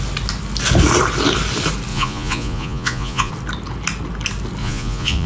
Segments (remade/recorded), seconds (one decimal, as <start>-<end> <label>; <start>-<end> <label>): 0.0-1.9 recorded; 1.9-3.3 remade; 3.3-4.6 recorded; 4.6-5.3 remade